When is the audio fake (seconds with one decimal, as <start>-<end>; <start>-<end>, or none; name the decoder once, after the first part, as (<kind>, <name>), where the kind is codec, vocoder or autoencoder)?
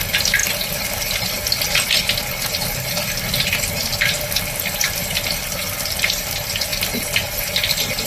none